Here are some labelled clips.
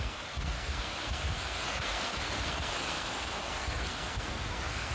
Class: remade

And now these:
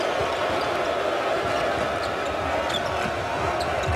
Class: recorded